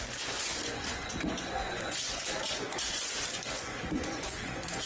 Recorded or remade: remade